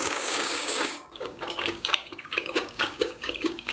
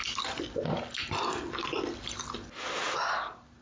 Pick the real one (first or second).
second